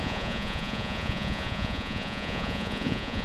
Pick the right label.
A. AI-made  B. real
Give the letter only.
A